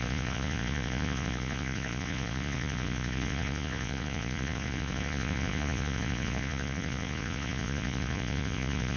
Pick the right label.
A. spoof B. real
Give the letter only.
A